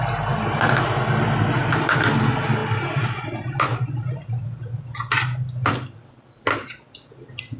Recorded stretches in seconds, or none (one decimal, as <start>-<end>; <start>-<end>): 0.0-7.6